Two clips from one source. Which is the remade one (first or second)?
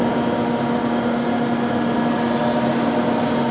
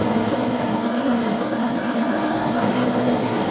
second